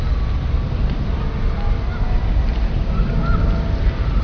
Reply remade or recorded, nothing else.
recorded